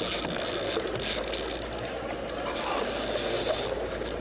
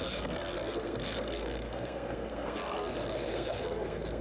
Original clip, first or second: first